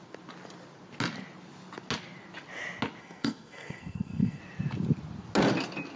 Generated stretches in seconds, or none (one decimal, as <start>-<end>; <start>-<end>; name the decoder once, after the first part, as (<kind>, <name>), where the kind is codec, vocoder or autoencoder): 3.0-4.4 (codec, SNAC)